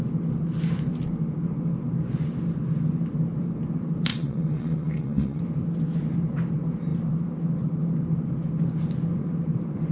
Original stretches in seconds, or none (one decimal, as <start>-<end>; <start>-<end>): 0.0-4.1; 5.4-9.9